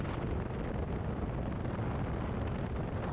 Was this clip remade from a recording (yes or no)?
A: no